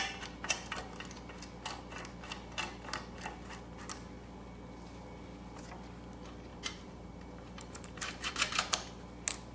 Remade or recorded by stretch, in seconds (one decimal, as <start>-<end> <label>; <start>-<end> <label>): 0.0-6.5 recorded; 6.5-8.3 remade; 8.3-9.5 recorded